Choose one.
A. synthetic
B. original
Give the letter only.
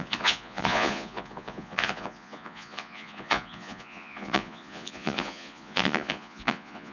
A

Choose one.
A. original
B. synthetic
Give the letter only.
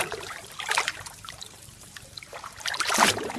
B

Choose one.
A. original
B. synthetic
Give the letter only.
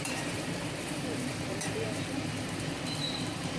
B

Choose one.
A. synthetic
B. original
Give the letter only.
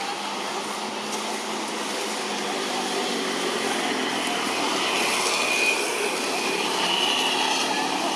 B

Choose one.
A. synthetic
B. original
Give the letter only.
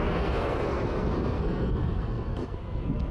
A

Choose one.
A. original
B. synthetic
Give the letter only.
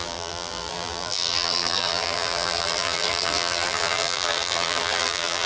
B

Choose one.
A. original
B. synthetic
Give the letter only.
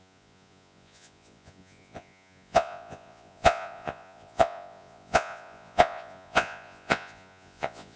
B